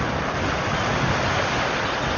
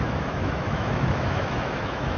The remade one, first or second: second